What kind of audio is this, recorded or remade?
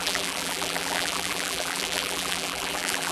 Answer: remade